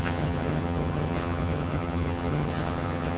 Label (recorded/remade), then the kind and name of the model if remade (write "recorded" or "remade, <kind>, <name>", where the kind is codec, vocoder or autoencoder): remade, vocoder, HiFi-GAN